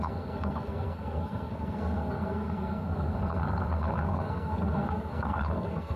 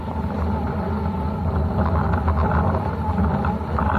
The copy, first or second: first